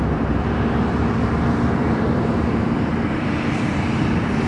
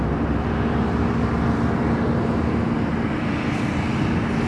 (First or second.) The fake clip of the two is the first